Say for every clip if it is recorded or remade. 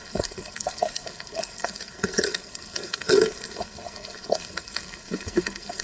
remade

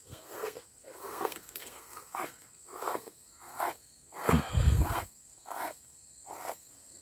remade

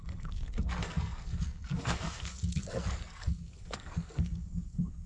remade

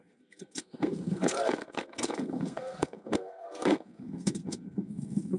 remade